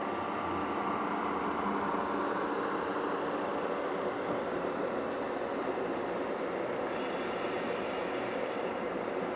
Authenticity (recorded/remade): recorded